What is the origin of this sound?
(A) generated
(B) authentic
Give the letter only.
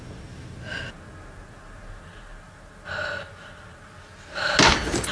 B